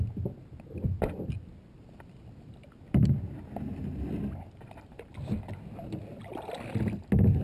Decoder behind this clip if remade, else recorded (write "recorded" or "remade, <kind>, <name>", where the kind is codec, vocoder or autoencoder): recorded